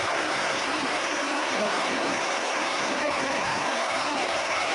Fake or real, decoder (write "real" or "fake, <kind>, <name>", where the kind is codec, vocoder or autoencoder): fake, codec, SNAC